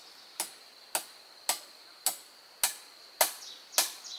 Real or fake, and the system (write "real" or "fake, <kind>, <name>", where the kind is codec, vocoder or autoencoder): real